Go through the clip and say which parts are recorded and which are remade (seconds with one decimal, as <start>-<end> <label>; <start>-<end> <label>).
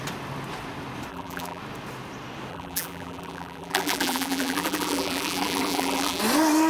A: 0.0-1.1 recorded; 1.1-1.6 remade; 1.6-2.5 recorded; 2.5-6.2 remade; 6.2-6.7 recorded